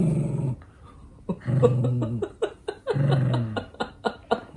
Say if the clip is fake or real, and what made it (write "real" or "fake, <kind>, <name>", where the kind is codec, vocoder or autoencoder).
real